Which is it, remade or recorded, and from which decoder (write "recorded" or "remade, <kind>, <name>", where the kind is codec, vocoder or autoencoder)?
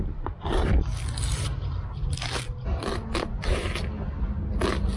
recorded